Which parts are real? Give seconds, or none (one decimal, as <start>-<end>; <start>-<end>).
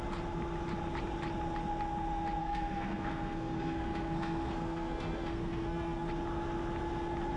0.0-2.4; 6.1-7.4